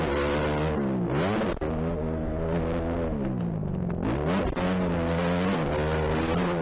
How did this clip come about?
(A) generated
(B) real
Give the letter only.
B